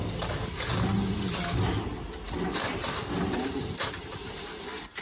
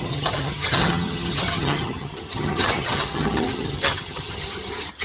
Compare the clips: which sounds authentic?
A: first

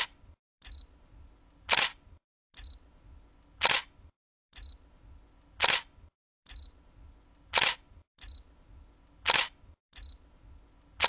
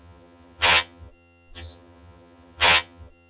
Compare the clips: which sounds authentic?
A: first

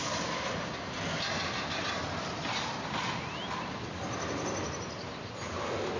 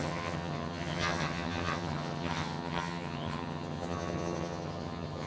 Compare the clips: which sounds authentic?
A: first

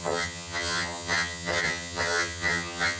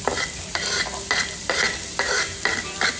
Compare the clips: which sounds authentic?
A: second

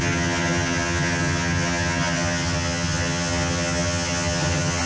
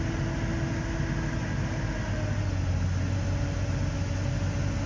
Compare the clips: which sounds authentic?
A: second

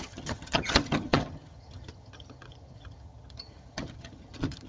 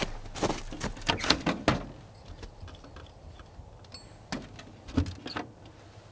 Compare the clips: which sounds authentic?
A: second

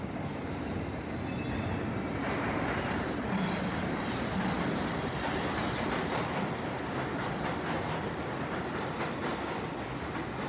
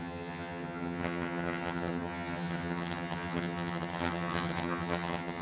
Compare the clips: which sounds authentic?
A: first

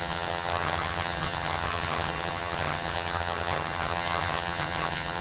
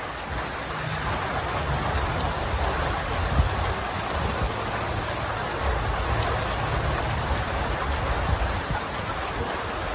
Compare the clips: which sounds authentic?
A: second